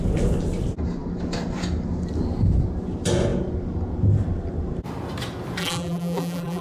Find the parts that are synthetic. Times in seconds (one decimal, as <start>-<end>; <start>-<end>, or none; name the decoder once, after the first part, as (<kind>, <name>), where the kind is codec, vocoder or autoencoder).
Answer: 5.6-6.6 (vocoder, BigVGAN v2)